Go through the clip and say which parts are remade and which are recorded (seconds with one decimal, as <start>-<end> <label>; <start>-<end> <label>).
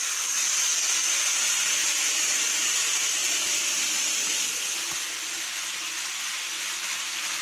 0.0-1.8 recorded; 1.8-2.6 remade; 2.6-7.4 recorded